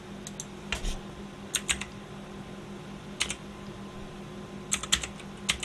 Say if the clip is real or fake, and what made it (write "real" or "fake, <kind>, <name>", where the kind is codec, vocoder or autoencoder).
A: real